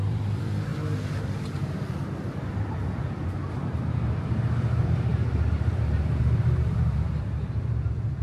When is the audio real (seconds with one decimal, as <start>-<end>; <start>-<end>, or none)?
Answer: 0.7-1.2; 5.1-6.2